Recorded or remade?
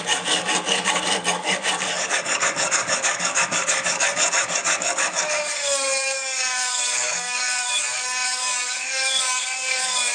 remade